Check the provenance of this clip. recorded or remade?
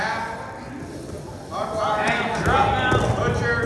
recorded